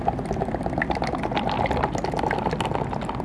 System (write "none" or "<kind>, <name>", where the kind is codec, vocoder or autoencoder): none